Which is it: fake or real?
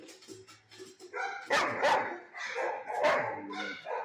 real